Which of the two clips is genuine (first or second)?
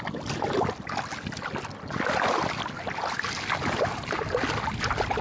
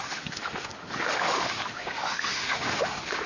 first